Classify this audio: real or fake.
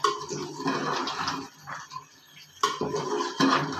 real